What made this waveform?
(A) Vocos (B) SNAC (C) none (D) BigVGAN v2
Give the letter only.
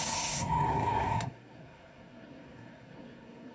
B